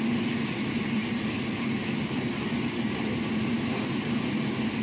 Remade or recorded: recorded